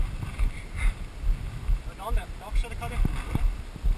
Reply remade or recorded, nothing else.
recorded